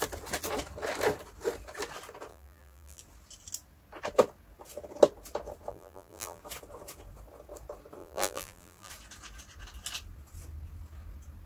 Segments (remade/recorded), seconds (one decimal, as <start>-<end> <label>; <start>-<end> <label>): 0.0-2.3 recorded; 2.3-3.0 remade; 3.0-5.7 recorded; 5.7-6.4 remade; 6.4-8.0 recorded; 8.0-8.9 remade; 8.9-11.5 recorded